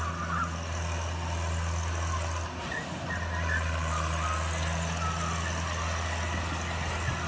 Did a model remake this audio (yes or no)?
no